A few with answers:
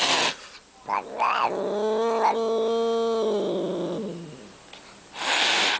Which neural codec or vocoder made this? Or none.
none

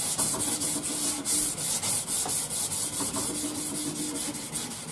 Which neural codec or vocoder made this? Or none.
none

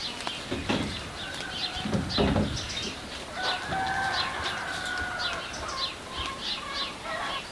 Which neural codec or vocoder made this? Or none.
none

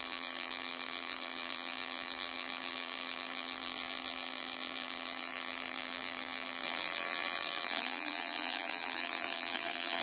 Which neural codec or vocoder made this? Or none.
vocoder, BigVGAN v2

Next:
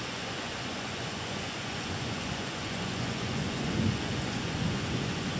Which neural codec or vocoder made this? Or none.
vocoder, Vocos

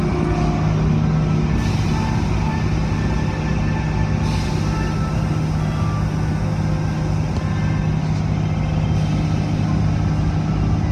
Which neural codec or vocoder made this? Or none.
none